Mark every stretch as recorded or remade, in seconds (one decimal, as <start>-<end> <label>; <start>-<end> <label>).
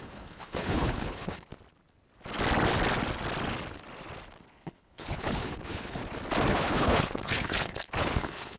0.0-1.5 remade; 1.5-4.5 recorded; 4.5-6.0 remade; 6.0-6.5 recorded; 6.5-8.6 remade